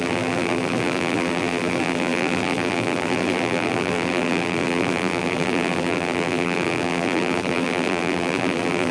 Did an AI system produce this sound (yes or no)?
yes